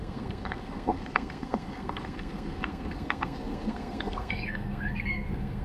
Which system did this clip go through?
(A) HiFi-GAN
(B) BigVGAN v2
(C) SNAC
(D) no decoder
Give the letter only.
C